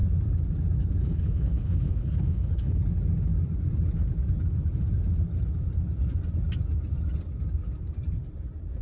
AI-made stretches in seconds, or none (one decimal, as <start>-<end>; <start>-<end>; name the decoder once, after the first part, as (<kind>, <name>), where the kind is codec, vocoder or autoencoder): 1.0-2.8 (codec, HILCodec)